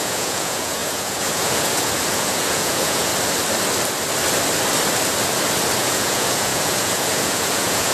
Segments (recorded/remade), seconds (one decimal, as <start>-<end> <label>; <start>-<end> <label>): 0.0-3.1 remade; 3.1-5.8 recorded; 5.8-7.9 remade